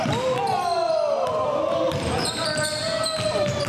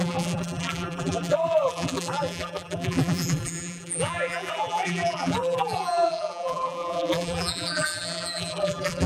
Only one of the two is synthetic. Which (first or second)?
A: second